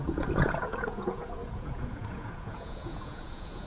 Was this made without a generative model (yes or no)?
no